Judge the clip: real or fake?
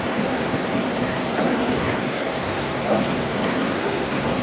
fake